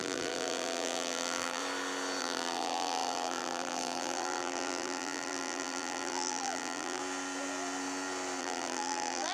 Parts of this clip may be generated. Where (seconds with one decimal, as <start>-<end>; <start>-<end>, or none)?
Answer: 0.0-1.6; 2.2-7.0; 8.4-9.3